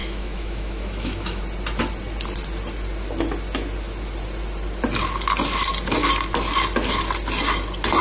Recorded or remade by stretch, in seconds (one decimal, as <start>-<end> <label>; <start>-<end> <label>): 0.0-1.4 remade; 1.4-8.0 recorded

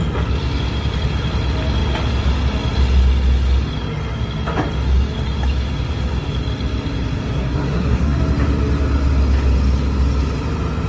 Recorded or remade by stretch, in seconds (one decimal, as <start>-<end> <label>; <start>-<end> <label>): 0.0-7.4 recorded; 7.4-8.2 remade; 8.2-10.9 recorded